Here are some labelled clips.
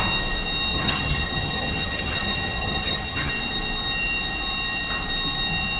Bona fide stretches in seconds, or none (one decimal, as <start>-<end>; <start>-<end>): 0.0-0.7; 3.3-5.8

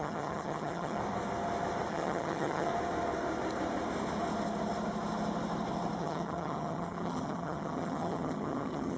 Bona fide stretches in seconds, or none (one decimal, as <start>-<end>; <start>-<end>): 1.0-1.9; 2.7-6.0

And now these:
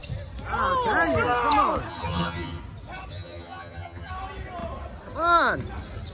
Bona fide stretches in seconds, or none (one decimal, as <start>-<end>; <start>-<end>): 0.0-1.9; 2.6-3.1; 4.1-6.1